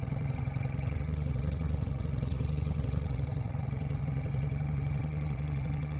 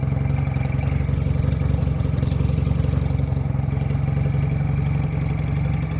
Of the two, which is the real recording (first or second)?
second